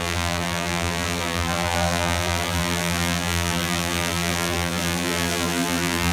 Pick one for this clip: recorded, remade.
remade